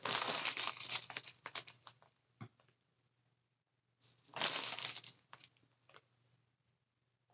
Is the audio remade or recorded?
recorded